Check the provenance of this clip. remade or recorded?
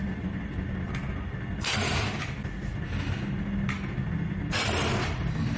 recorded